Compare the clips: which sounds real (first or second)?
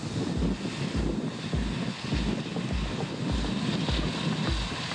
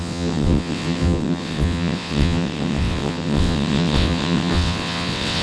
first